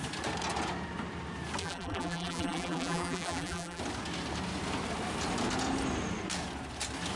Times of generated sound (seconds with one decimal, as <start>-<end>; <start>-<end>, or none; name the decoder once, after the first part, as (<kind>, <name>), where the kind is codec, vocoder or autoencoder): 1.6-3.8 (vocoder, BigVGAN v2)